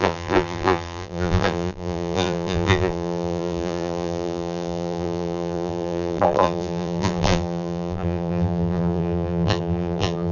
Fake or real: fake